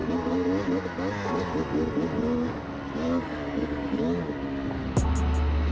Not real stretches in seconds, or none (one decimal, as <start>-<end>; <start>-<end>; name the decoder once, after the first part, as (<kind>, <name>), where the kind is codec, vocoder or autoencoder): 3.2-4.0 (codec, DAC)